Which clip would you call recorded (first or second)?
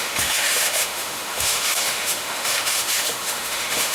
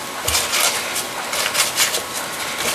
second